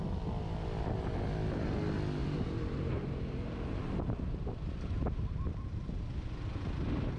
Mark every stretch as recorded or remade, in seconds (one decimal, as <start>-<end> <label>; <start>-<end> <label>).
0.0-2.2 recorded; 2.2-5.9 remade; 5.9-7.2 recorded